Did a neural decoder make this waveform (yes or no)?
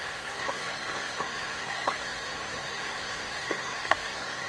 yes